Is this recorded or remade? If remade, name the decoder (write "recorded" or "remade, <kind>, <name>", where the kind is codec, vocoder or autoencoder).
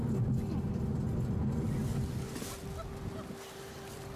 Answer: recorded